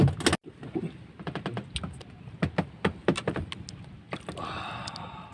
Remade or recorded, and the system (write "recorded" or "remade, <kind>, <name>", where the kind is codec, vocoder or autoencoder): recorded